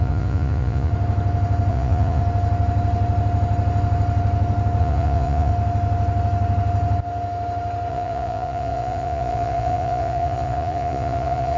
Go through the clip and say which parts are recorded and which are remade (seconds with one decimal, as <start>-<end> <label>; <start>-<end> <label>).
0.0-0.9 remade; 0.9-1.7 recorded; 1.7-2.2 remade; 2.2-4.8 recorded; 4.8-5.5 remade; 5.5-7.9 recorded; 7.9-11.6 remade